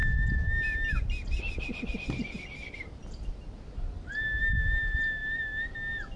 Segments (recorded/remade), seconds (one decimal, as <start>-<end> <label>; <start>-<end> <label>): 0.0-6.2 recorded